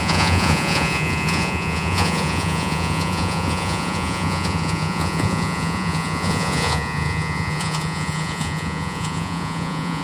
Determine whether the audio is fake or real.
fake